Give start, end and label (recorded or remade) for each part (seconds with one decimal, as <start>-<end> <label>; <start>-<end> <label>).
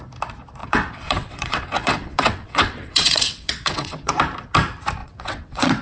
0.0-0.6 recorded; 0.6-4.1 remade; 4.1-5.0 recorded; 5.0-5.8 remade